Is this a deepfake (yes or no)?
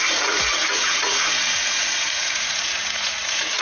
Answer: yes